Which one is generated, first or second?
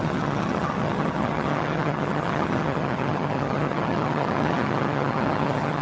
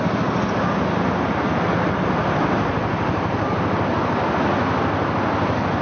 first